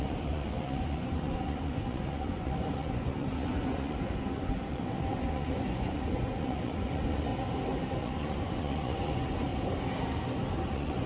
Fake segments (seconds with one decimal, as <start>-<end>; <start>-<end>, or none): 0.0-7.3; 8.0-9.5; 10.6-11.1